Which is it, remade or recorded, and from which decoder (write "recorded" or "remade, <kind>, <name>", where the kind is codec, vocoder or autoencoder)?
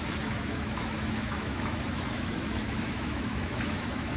remade, autoencoder, DAC-VAE